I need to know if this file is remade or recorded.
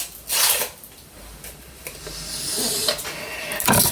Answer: recorded